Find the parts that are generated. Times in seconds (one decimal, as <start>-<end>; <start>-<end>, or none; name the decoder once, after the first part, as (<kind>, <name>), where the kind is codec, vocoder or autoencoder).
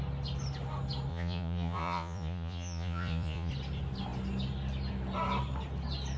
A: 1.1-3.5 (vocoder, Vocos)